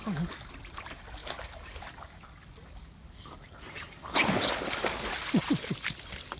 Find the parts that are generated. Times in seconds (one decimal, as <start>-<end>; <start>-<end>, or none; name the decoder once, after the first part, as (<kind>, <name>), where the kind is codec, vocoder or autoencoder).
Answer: 0.0-0.5 (codec, DAC); 1.2-3.4